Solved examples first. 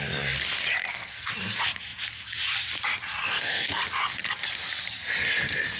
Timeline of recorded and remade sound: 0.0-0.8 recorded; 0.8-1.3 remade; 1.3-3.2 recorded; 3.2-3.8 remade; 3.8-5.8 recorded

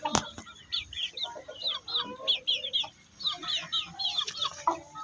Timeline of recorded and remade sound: 0.0-5.0 recorded

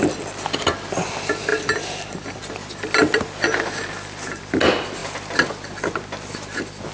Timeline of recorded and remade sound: 0.0-6.9 recorded